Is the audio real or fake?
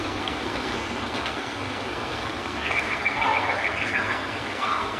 fake